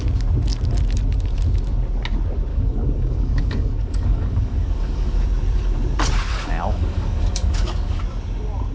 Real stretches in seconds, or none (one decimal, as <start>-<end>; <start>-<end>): 0.0-2.5; 5.2-6.3; 8.0-8.7

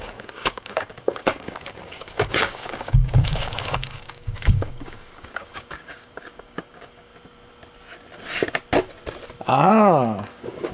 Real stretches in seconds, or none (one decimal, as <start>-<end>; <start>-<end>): 7.1-9.7

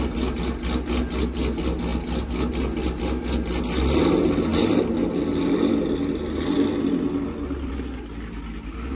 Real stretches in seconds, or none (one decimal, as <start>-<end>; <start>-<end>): 0.0-8.9

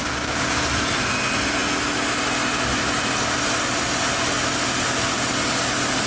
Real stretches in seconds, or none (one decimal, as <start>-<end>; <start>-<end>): 0.5-6.1

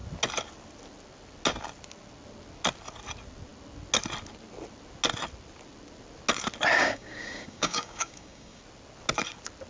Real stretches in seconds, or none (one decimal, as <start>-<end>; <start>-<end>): 0.0-6.8; 8.6-9.7

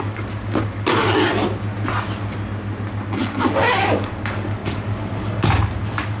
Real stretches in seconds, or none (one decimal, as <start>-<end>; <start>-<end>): 1.3-3.2

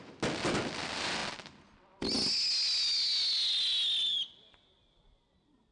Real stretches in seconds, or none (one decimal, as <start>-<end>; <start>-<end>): 0.0-5.7

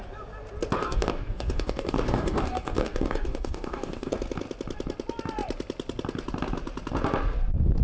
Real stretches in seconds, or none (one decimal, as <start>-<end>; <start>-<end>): 0.0-0.8; 4.1-7.8